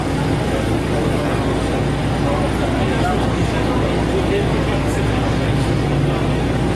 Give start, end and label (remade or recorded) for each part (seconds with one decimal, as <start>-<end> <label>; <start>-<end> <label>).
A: 0.0-2.0 remade; 2.0-2.9 recorded; 2.9-6.7 remade